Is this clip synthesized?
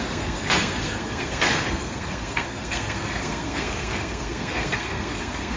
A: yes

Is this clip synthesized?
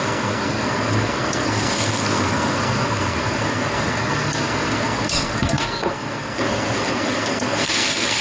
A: yes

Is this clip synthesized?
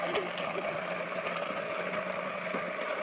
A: no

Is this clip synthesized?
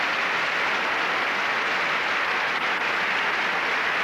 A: no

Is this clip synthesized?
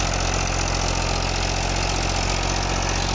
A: no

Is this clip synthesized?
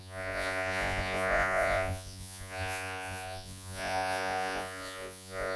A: yes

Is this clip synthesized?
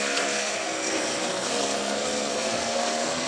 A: yes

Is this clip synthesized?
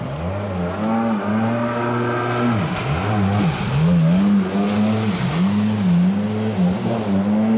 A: no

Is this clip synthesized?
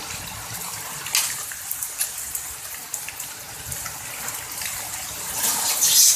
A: no